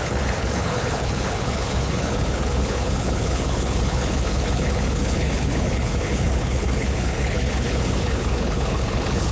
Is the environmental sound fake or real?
fake